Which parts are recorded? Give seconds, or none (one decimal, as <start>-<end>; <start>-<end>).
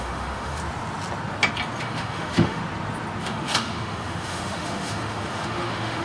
0.6-1.8; 2.6-3.2